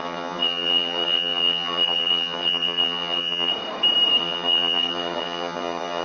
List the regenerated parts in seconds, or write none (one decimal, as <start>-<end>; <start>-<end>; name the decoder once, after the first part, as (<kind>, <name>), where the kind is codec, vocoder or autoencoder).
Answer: 0.0-3.5 (vocoder, HiFi-GAN); 4.2-6.0